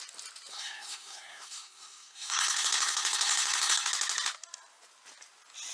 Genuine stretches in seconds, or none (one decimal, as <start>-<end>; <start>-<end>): 0.0-0.5; 3.9-5.7